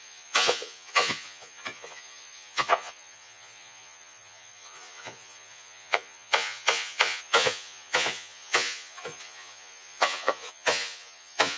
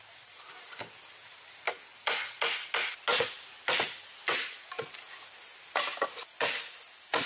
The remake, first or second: first